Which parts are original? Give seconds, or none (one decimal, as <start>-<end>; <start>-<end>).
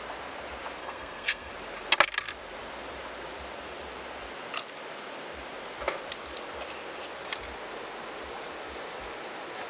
0.0-0.8; 1.5-9.7